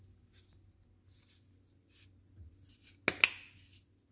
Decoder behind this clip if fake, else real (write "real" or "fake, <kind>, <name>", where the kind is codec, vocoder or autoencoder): real